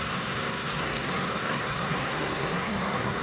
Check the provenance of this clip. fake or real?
fake